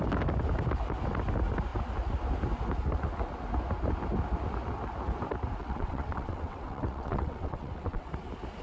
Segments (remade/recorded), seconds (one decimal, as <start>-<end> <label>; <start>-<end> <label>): 0.0-5.6 recorded; 5.6-8.1 remade; 8.1-8.6 recorded